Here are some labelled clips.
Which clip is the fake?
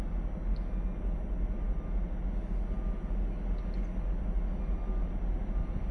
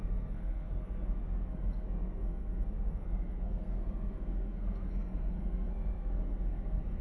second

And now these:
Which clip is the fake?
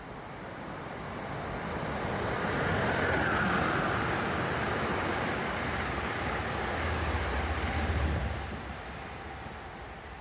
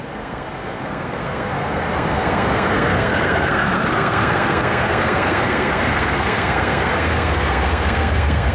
second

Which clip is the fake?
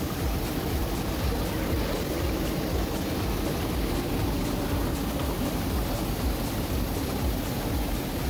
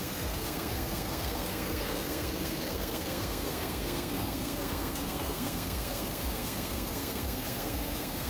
second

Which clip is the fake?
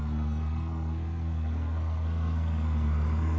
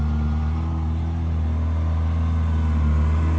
first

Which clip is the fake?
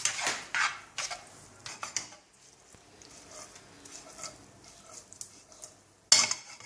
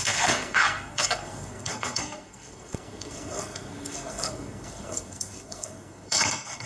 second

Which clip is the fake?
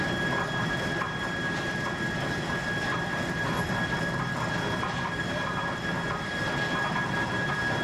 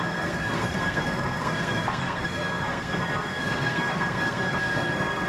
second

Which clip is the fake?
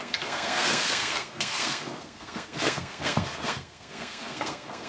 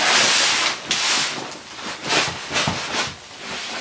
first